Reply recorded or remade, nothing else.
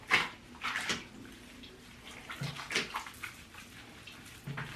recorded